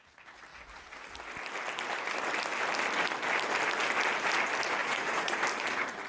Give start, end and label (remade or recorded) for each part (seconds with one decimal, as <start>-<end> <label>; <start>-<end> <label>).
0.0-4.8 recorded; 4.8-5.4 remade; 5.4-6.1 recorded